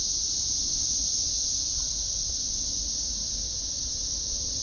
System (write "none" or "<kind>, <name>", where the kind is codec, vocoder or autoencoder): none